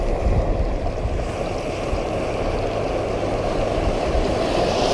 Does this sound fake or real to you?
real